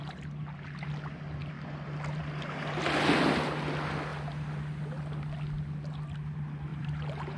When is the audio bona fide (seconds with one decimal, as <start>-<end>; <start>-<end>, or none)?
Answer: 0.0-6.7